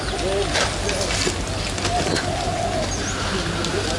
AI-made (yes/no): no